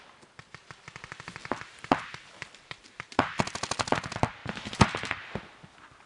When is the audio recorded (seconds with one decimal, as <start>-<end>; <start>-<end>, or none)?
0.0-1.4; 3.4-4.4; 5.4-6.1